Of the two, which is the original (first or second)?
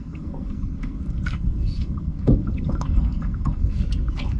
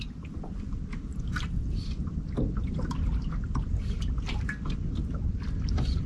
second